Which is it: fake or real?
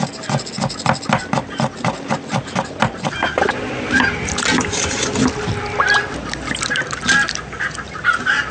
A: real